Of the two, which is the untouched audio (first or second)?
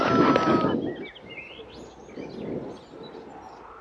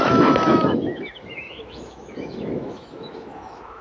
first